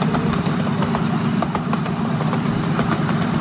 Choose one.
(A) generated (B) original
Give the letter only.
A